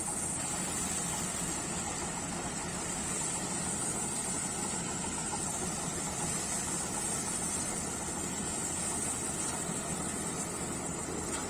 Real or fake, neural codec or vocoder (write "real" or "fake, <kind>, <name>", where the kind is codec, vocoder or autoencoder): real